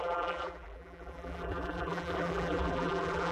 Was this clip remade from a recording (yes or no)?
yes